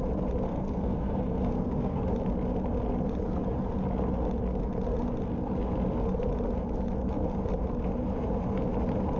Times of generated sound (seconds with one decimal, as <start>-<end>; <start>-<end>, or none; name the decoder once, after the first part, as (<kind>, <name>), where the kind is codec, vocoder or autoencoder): 0.5-2.0 (codec, SNAC)